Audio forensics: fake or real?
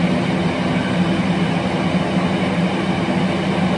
real